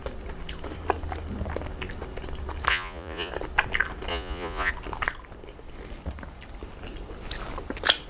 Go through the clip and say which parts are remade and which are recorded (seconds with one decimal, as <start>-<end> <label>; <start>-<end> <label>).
0.0-2.7 recorded; 2.7-3.3 remade; 3.3-4.1 recorded; 4.1-4.7 remade; 4.7-8.1 recorded